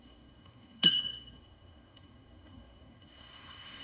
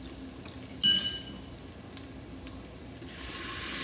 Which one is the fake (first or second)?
first